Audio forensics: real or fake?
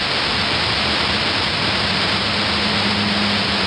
real